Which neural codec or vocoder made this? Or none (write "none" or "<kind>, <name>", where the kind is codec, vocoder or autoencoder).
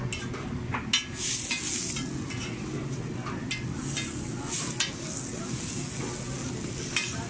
none